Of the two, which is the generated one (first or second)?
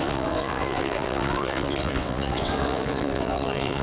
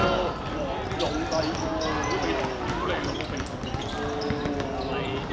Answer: first